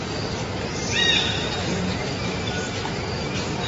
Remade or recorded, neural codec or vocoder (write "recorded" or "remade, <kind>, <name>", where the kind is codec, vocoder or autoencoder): recorded